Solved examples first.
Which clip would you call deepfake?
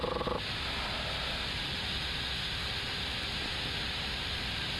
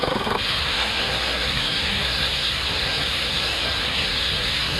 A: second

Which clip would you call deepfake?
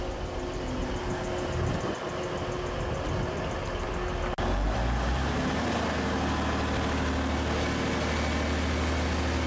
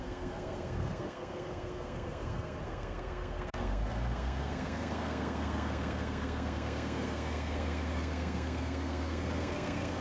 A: second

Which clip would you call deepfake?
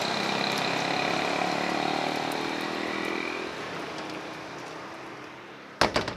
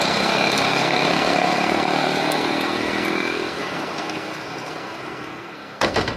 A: second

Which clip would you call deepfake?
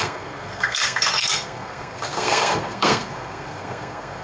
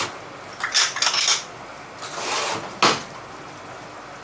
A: first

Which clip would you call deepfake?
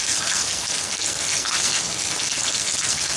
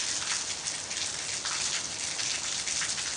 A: first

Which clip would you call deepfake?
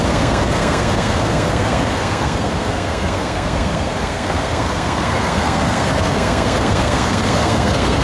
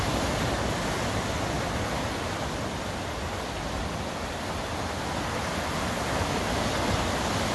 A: first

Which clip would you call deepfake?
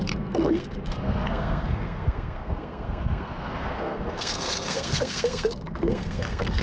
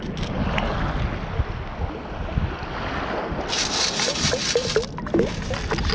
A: first